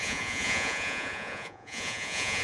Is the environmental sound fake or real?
fake